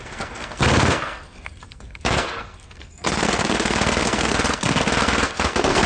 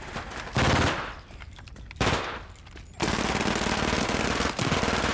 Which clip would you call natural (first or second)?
second